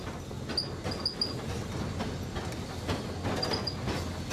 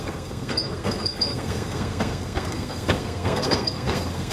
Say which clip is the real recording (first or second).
first